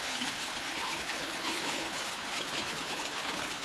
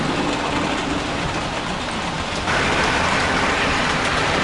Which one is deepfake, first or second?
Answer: first